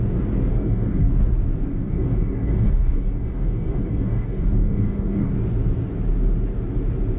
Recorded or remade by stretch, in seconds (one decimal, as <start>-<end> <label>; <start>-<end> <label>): 0.0-0.5 recorded; 0.5-1.1 remade; 1.1-1.7 recorded; 1.7-5.3 remade; 5.3-7.2 recorded

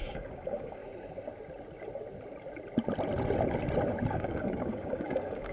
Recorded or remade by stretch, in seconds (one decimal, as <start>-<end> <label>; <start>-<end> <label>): 0.0-0.8 remade; 0.8-4.1 recorded; 4.1-5.5 remade

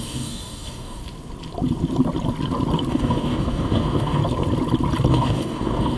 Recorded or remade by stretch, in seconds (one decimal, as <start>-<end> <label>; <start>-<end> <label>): 0.0-1.0 remade; 1.0-2.9 recorded; 2.9-4.2 remade; 4.2-5.1 recorded; 5.1-6.0 remade

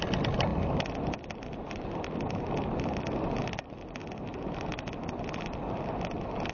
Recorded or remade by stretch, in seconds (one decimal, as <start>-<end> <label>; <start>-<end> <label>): 0.0-6.5 recorded

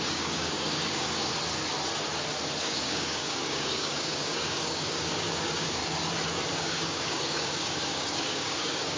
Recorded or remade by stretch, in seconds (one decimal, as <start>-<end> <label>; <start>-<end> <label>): 0.0-1.3 remade; 1.3-2.6 recorded; 2.6-5.8 remade; 5.8-6.5 recorded; 6.5-9.0 remade